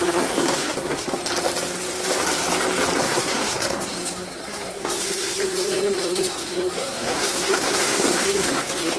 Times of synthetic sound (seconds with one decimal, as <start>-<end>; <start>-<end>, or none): 0.0-1.2; 3.0-9.0